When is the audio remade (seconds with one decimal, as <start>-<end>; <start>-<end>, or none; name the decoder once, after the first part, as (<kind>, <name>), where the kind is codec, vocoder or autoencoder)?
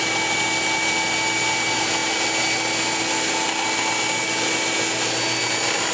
none